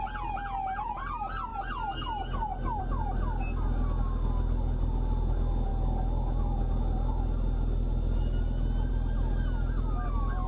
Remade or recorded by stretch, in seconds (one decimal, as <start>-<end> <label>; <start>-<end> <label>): 0.0-10.5 recorded

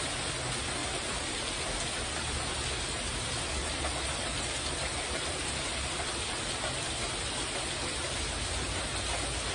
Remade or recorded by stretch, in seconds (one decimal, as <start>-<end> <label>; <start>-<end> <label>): 0.0-0.8 recorded; 0.8-1.5 remade; 1.5-3.6 recorded; 3.6-5.9 remade; 5.9-9.5 recorded

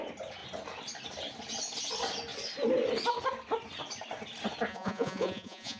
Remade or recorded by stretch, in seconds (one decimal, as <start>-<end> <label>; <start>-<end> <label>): 0.0-4.7 recorded; 4.7-5.8 remade

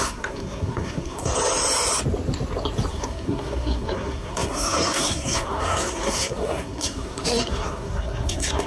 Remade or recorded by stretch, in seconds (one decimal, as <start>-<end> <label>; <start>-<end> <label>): 0.0-1.3 remade; 1.3-2.9 recorded; 2.9-8.7 remade

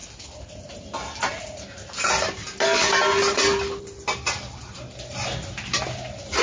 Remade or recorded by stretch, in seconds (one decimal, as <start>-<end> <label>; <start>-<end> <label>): 0.0-6.4 recorded